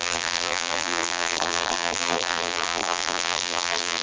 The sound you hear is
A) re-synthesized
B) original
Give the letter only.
A